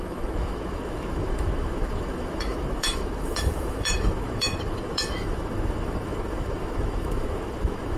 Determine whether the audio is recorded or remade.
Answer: remade